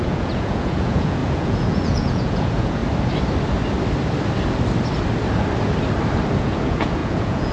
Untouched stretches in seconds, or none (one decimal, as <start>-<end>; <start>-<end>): 2.8-6.4